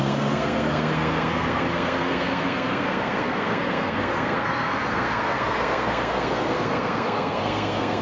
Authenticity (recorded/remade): remade